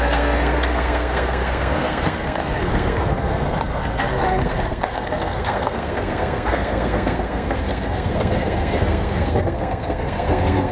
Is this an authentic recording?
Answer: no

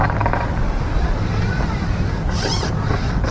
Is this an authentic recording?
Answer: no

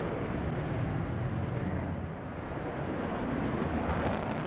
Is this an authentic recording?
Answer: yes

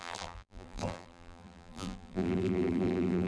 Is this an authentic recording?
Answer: no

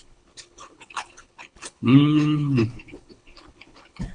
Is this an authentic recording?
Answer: no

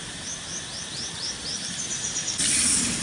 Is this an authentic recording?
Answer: yes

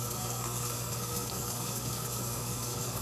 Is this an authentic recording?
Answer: no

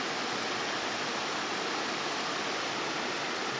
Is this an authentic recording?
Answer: yes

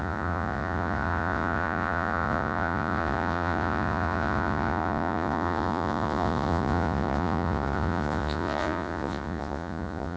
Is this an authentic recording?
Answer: no